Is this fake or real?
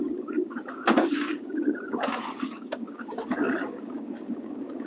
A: fake